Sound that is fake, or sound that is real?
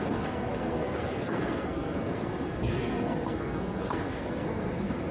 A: fake